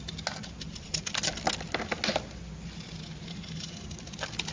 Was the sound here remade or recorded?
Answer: recorded